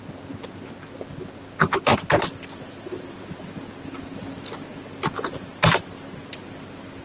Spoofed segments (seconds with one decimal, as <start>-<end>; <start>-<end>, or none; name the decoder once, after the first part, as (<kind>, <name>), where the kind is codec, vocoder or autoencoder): none